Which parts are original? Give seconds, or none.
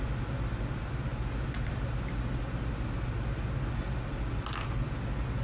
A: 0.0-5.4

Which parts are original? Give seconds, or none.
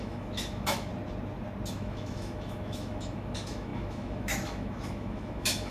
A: 0.9-1.7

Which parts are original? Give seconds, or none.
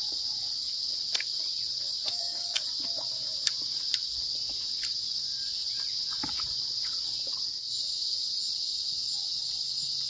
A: 0.0-2.1; 2.6-10.1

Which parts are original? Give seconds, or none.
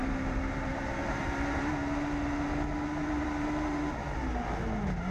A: 1.7-3.0; 4.0-5.1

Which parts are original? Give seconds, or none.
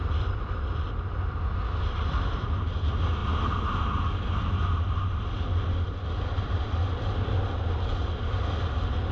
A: 0.0-9.1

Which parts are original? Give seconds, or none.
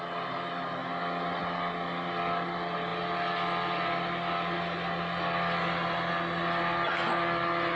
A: 0.0-7.8